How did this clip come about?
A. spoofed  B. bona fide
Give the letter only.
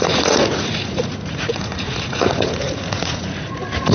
A